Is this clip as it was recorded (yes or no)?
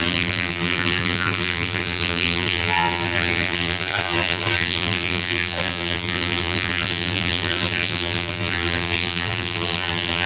no